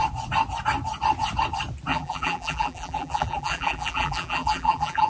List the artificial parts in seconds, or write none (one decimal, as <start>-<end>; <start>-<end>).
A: 1.9-5.1